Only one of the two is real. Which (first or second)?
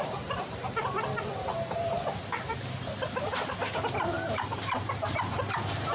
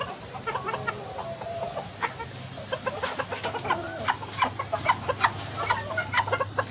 second